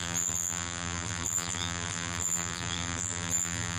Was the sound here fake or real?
fake